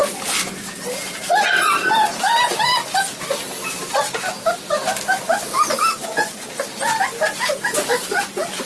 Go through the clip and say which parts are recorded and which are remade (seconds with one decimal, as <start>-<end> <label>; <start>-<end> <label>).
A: 0.0-8.0 recorded; 8.0-8.7 remade